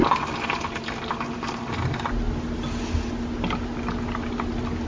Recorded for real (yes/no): yes